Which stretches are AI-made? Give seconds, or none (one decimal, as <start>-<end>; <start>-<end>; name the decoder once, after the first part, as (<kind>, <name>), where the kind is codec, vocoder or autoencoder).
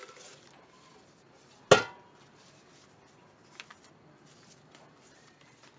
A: none